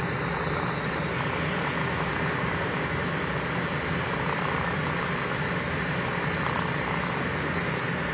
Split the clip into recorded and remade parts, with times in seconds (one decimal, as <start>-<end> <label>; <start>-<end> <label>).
0.0-1.8 recorded; 1.8-2.8 remade; 2.8-8.1 recorded